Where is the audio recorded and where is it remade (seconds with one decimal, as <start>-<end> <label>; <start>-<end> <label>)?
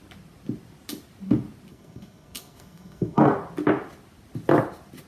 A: 0.0-1.7 recorded; 1.7-3.3 remade; 3.3-5.1 recorded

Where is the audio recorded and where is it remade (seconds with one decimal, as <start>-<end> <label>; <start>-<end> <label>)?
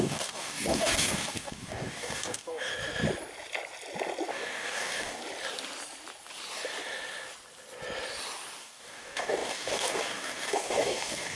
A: 0.0-2.7 remade; 2.7-4.3 recorded; 4.3-5.2 remade; 5.2-8.6 recorded; 8.6-11.4 remade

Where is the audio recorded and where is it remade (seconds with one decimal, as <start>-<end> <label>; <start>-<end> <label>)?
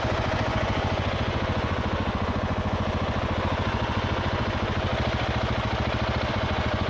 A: 0.0-4.9 remade; 4.9-6.3 recorded; 6.3-6.9 remade